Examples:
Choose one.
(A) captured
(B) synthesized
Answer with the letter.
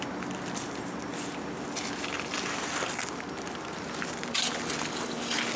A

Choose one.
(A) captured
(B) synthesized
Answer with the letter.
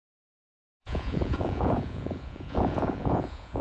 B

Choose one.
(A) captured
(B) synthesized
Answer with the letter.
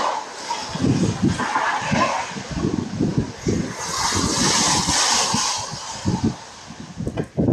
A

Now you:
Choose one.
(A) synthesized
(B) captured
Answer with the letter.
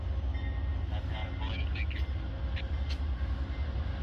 B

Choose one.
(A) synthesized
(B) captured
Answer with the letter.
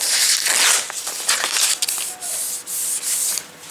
B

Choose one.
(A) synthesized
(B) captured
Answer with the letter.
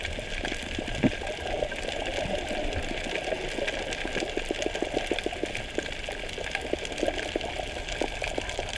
B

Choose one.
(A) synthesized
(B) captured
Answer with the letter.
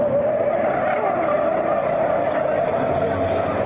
B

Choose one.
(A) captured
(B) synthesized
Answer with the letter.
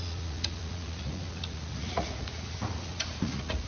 B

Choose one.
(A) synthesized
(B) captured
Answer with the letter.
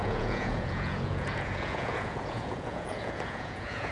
A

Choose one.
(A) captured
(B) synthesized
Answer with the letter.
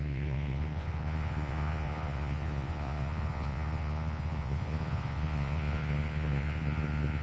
B